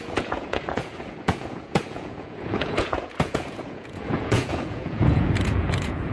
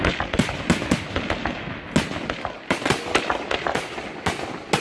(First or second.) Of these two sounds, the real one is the second